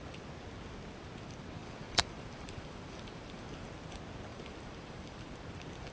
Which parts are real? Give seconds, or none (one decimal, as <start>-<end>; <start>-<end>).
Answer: 0.0-1.6; 3.7-4.3; 5.3-5.9